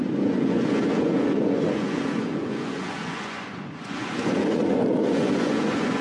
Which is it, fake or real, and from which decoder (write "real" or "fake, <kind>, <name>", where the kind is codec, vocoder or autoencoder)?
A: fake, vocoder, Vocos